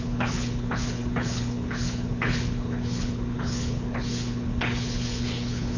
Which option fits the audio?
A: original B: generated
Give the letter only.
B